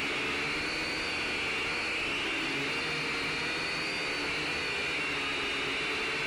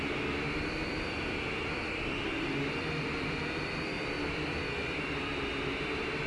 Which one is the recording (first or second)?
first